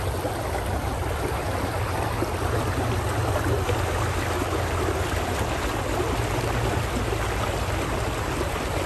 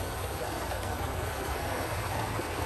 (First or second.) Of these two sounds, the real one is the first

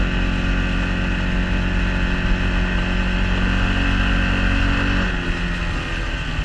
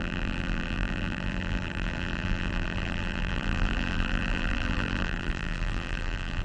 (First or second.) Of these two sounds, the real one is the first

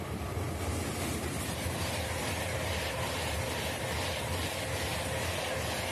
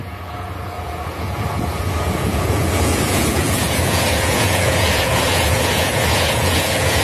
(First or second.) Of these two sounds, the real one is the first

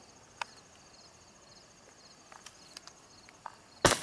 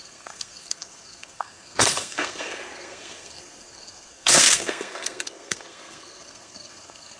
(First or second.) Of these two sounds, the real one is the first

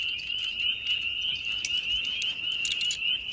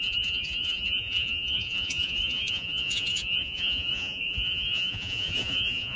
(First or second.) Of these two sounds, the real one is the first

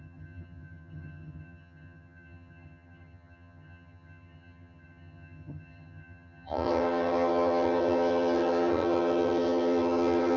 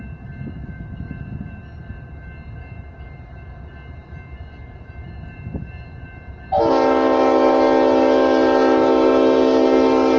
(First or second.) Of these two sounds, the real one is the second